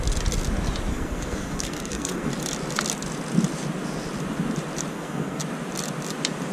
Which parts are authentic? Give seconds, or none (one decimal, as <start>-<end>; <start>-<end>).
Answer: 0.0-0.9; 2.3-4.9; 5.4-6.5